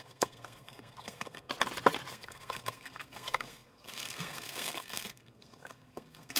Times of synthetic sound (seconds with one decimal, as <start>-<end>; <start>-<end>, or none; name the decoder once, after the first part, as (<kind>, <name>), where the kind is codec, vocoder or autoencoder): 0.0-1.5 (codec, SNAC); 2.1-6.4